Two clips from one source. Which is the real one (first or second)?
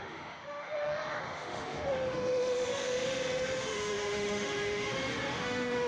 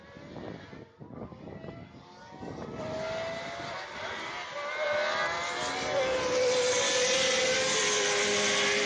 second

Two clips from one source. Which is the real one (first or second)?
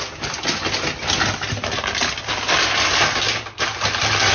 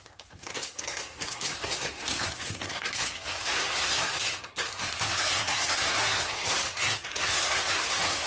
first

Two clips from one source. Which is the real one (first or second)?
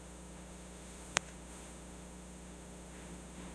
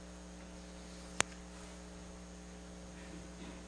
second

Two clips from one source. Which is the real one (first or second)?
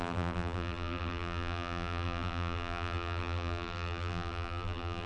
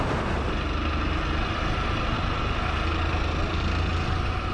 second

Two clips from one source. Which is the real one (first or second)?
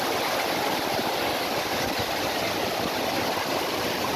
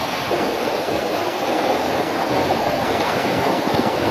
first